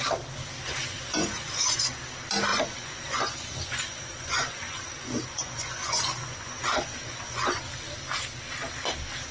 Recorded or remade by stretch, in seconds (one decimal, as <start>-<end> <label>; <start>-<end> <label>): 0.0-0.8 recorded; 0.8-1.8 remade; 1.8-2.5 recorded; 2.5-7.6 remade; 7.6-9.3 recorded